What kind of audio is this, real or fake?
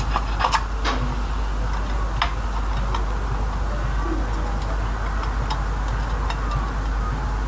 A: real